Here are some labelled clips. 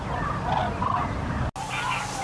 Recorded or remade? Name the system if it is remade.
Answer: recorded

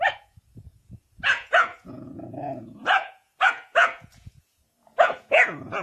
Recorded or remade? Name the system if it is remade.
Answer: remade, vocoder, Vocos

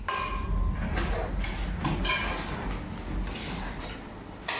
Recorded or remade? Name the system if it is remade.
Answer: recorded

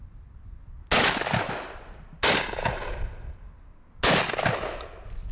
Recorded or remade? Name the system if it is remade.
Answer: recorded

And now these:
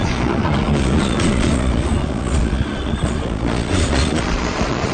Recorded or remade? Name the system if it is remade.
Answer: remade, vocoder, Vocos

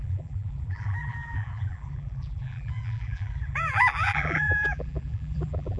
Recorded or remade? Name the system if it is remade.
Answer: remade, vocoder, BigVGAN v2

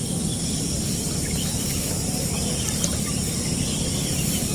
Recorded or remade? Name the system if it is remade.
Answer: remade, vocoder, BigVGAN v2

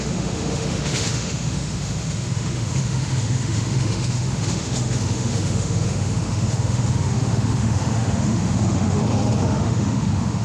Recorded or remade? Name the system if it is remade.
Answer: remade, autoencoder, DAC-VAE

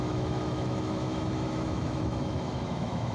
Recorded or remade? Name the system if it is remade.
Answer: remade, autoencoder, DAC-VAE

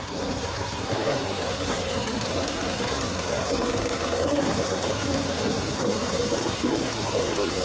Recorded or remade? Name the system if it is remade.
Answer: remade, codec, SNAC